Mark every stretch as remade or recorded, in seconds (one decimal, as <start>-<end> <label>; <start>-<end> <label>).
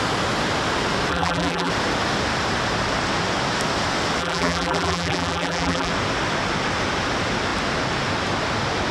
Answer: 0.0-1.1 recorded; 1.1-1.7 remade; 1.7-4.2 recorded; 4.2-5.9 remade; 5.9-8.9 recorded